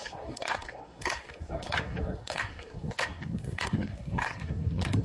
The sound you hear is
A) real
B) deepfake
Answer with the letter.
B